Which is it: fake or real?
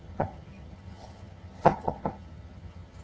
fake